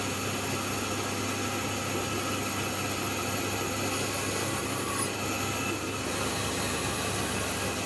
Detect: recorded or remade recorded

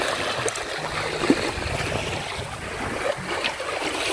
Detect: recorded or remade recorded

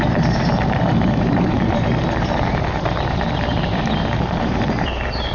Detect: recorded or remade remade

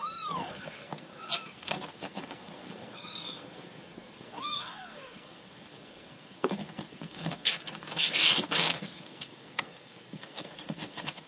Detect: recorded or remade remade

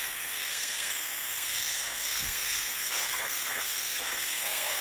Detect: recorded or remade remade